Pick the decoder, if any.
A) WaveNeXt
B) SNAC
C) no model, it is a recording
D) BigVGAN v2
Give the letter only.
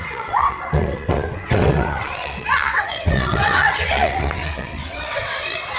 A